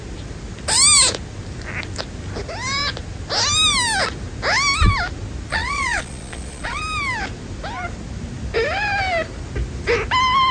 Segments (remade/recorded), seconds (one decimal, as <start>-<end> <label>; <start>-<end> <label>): 0.0-5.5 recorded; 5.5-6.8 remade; 6.8-10.5 recorded